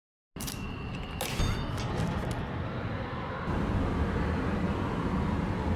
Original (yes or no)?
yes